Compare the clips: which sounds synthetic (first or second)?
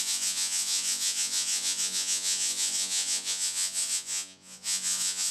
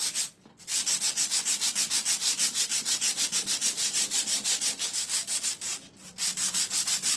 first